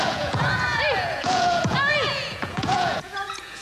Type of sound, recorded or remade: remade